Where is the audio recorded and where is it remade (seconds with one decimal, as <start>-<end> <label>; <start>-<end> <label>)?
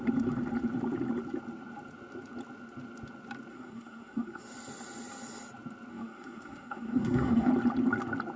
0.0-3.5 recorded; 3.5-4.4 remade; 4.4-5.9 recorded; 5.9-7.5 remade; 7.5-8.4 recorded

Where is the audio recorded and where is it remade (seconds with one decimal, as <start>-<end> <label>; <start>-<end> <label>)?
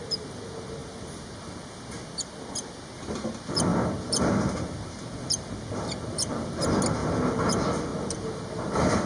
0.0-9.1 recorded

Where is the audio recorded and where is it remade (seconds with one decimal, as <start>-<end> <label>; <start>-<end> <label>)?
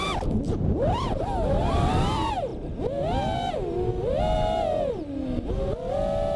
0.0-6.4 recorded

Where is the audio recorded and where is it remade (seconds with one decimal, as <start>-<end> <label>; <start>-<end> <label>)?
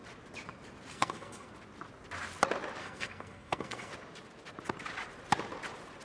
0.0-0.9 recorded; 0.9-1.5 remade; 1.5-2.8 recorded; 2.8-3.9 remade; 3.9-6.0 recorded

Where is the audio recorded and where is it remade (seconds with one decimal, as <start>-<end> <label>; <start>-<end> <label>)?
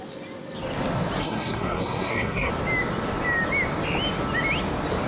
0.0-1.2 recorded; 1.2-2.5 remade; 2.5-5.1 recorded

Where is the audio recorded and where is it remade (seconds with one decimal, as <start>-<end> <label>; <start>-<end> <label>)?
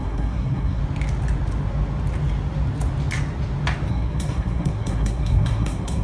0.0-0.8 remade; 0.8-3.9 recorded; 3.9-6.0 remade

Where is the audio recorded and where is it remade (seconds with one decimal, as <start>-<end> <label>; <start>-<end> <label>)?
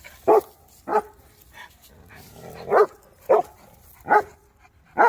0.0-5.1 recorded